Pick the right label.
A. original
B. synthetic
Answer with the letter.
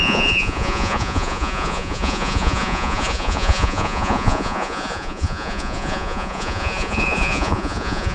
B